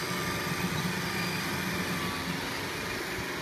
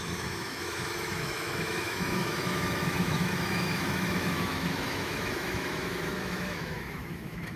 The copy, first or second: second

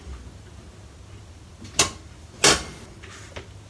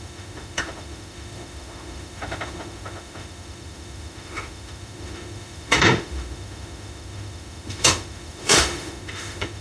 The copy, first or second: second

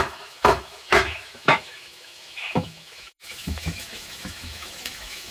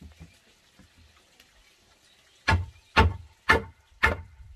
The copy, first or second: first